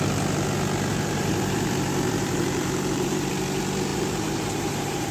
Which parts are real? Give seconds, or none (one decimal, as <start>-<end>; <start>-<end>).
0.0-0.9; 3.3-3.9